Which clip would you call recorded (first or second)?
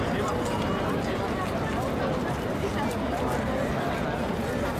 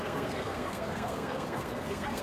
first